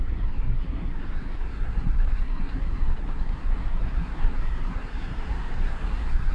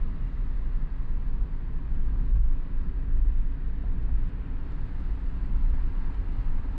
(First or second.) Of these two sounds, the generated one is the first